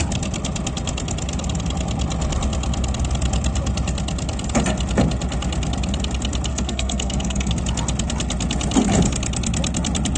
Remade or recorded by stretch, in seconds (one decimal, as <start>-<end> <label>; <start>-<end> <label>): 0.0-6.5 recorded; 6.5-7.6 remade; 7.6-10.2 recorded